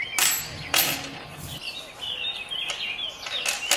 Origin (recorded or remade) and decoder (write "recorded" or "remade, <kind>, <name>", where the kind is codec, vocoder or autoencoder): recorded